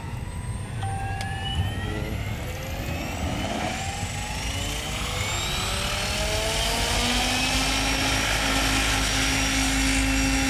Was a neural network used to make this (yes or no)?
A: no